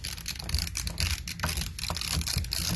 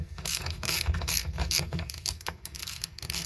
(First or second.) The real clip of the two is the first